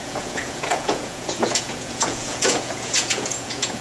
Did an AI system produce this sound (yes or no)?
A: yes